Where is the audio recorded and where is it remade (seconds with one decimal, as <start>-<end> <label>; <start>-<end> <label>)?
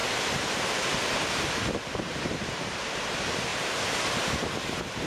0.0-3.1 remade; 3.1-3.5 recorded; 3.5-5.1 remade